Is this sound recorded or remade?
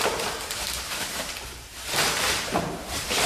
remade